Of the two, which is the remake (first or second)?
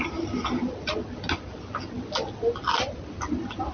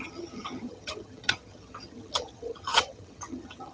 second